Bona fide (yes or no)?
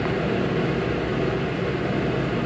yes